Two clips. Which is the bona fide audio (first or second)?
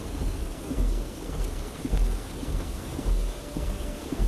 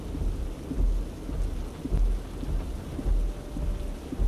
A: second